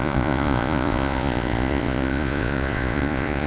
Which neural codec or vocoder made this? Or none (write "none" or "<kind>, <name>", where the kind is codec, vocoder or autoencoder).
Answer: vocoder, Vocos